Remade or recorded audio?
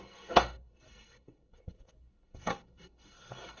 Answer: remade